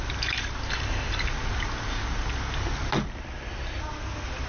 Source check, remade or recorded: recorded